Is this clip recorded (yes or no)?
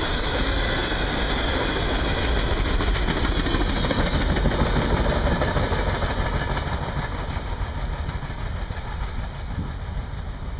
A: yes